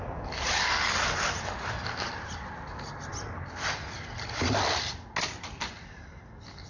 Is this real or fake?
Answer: real